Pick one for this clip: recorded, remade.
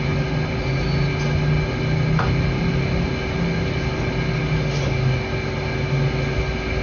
recorded